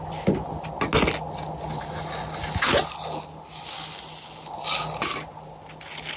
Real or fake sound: real